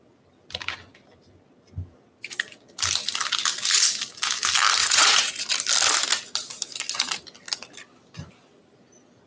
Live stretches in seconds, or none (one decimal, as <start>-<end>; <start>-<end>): 0.0-4.8; 5.4-9.3